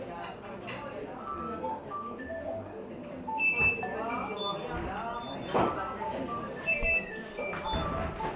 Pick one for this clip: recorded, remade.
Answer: recorded